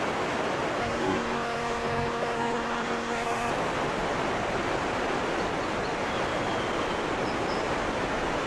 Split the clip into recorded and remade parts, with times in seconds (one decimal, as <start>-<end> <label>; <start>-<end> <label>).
0.0-0.8 recorded; 0.8-3.5 remade; 3.5-8.5 recorded